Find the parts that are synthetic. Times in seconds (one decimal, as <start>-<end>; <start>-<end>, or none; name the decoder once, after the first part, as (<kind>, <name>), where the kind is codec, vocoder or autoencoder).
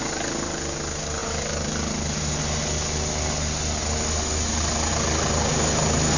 none